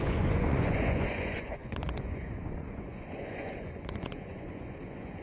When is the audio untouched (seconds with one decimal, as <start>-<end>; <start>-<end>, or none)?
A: none

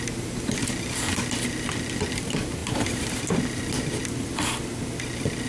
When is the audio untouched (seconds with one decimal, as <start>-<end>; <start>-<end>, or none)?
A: 0.0-2.6; 3.2-5.5

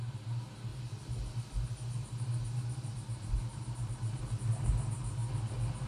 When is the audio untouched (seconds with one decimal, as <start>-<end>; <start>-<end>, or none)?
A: 0.0-0.7; 4.2-5.9